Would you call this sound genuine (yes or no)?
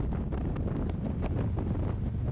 yes